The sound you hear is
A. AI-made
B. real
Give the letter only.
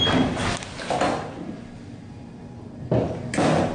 B